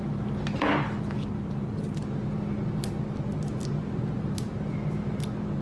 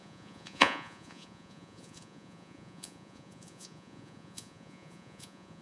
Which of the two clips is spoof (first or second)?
second